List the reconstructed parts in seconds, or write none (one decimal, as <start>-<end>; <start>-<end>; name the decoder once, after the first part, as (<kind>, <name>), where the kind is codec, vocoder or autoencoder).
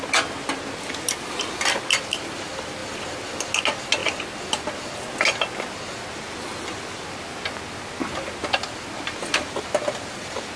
none